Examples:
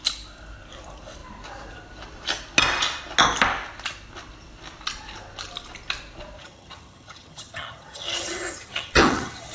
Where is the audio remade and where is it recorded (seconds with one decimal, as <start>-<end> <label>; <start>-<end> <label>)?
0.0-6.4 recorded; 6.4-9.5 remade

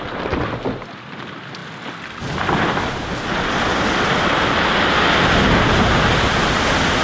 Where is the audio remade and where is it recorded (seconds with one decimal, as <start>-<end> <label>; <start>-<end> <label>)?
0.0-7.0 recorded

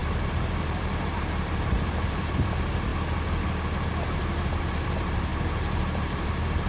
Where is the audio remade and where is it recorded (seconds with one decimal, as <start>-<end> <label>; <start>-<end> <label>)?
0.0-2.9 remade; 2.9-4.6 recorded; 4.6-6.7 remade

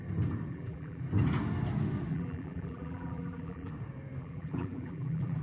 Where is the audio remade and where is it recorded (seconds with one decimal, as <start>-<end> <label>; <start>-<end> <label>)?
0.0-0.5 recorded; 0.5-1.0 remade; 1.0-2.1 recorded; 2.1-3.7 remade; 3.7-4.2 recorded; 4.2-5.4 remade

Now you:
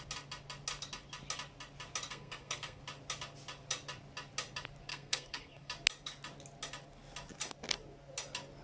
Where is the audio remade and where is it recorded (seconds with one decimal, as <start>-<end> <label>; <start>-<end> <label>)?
0.0-2.1 recorded; 2.1-2.8 remade; 2.8-4.9 recorded; 4.9-5.7 remade; 5.7-8.6 recorded

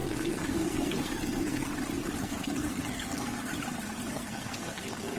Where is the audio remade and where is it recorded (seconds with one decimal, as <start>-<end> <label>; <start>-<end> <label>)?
0.0-1.7 remade; 1.7-2.2 recorded; 2.2-3.5 remade; 3.5-4.1 recorded; 4.1-5.2 remade

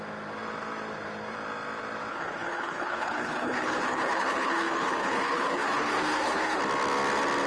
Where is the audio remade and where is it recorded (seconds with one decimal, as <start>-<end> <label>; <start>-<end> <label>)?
0.0-2.1 recorded; 2.1-6.6 remade; 6.6-7.5 recorded

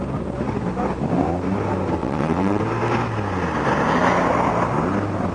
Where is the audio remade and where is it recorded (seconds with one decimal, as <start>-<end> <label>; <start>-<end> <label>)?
0.0-2.0 recorded; 2.0-2.6 remade; 2.6-5.3 recorded